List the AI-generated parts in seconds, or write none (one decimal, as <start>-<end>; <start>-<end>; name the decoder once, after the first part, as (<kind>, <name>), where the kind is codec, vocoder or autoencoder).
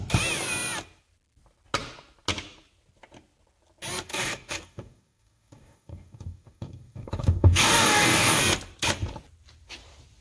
4.1-8.4 (codec, DAC)